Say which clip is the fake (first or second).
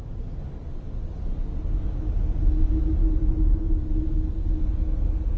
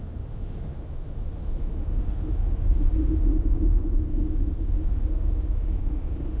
second